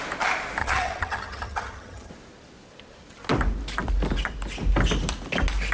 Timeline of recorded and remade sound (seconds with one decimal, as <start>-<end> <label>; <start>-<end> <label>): 0.0-0.6 recorded; 0.6-2.1 remade; 2.1-5.7 recorded